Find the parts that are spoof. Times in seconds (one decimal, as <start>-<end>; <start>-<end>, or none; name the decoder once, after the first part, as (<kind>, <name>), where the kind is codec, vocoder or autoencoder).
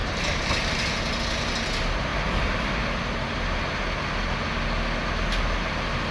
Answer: 0.0-1.0 (vocoder, BigVGAN v2)